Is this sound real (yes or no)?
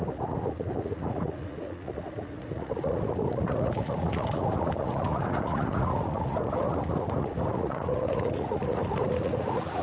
no